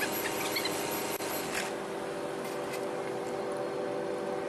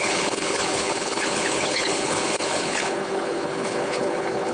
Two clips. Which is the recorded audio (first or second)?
first